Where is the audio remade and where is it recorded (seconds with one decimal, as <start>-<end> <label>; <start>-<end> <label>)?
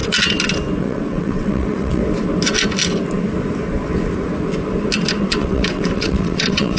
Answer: 0.0-0.8 recorded; 0.8-2.0 remade; 2.0-5.2 recorded; 5.2-6.8 remade